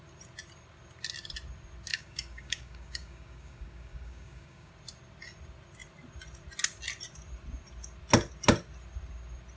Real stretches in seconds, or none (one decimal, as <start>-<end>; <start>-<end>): 0.0-1.9; 4.7-9.6